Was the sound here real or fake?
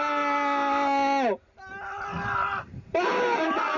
real